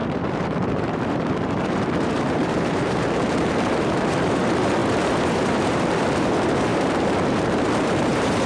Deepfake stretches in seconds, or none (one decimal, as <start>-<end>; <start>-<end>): 0.0-8.5

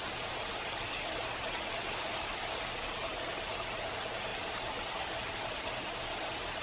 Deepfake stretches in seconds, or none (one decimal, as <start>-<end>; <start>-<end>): 4.3-5.5

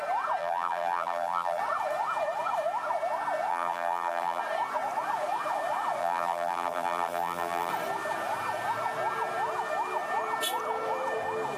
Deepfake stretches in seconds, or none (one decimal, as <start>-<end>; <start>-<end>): 0.4-1.6; 3.5-4.4; 6.0-7.7

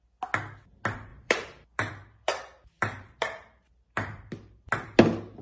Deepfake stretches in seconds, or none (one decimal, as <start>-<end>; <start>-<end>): 1.1-4.3

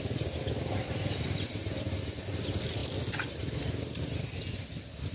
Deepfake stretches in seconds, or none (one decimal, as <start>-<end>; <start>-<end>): none

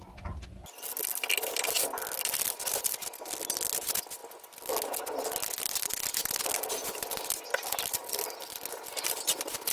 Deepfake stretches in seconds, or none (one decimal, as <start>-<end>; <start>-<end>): none